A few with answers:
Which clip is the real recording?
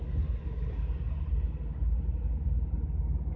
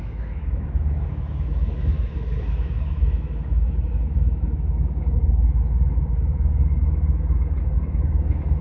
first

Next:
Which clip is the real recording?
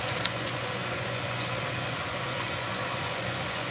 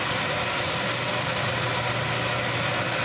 second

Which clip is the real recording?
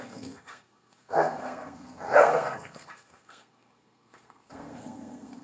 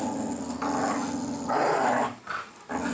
second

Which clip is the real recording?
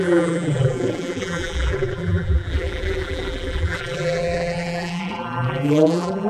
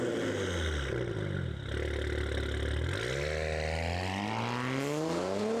second